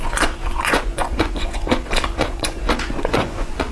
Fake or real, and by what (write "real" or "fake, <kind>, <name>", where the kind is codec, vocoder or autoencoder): fake, vocoder, Vocos